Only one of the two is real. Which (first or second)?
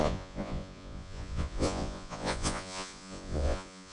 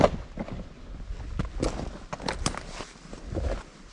second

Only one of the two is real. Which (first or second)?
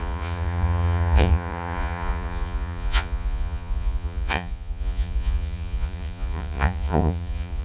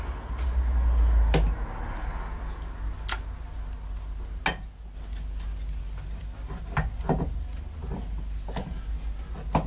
second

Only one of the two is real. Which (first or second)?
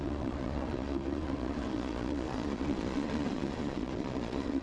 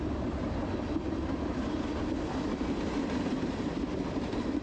second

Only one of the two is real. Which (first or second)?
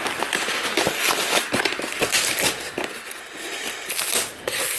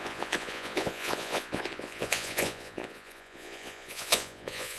first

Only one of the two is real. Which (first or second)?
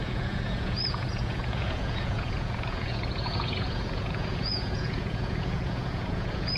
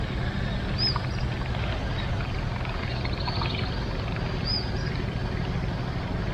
second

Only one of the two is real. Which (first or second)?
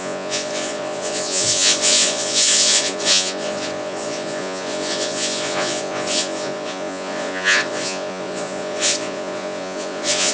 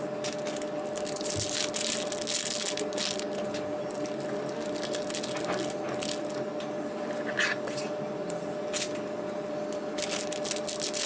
second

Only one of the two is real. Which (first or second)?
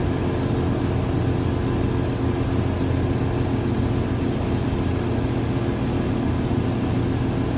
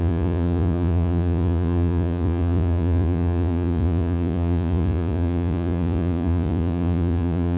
first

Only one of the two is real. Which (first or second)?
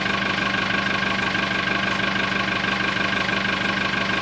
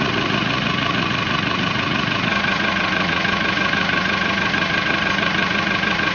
first